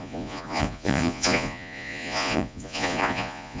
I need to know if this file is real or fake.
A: fake